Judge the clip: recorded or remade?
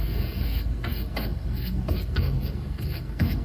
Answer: remade